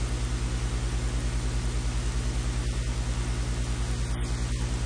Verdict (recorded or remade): recorded